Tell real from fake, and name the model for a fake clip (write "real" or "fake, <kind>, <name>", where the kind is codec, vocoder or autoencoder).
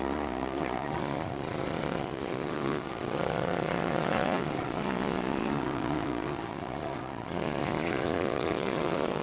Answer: fake, vocoder, Vocos